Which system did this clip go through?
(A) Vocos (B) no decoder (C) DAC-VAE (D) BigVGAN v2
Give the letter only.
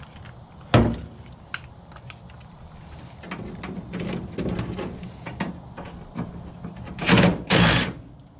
B